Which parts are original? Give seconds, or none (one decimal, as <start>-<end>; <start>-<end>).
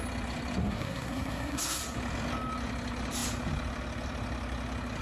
0.0-0.6; 1.8-5.0